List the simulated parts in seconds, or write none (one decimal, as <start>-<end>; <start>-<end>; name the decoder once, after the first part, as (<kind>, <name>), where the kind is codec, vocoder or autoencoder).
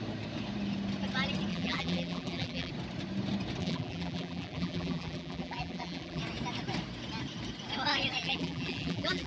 1.5-2.7 (vocoder, BigVGAN v2); 3.6-6.2; 8.2-9.3